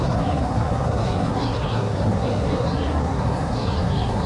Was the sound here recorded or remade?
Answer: remade